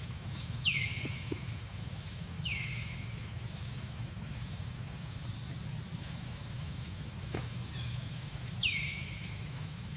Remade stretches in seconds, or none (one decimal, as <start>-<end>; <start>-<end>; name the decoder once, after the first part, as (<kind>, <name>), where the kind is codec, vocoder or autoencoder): 0.0-5.2 (autoencoder, DAC-VAE); 6.0-10.0